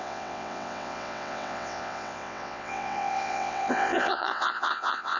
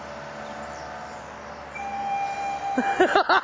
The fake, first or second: first